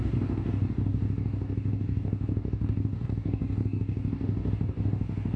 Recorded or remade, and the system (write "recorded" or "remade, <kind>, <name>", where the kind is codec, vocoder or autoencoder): remade, codec, DAC